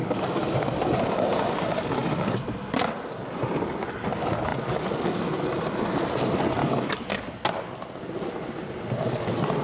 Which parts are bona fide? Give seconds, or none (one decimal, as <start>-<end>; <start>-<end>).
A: 1.0-6.6; 7.2-9.6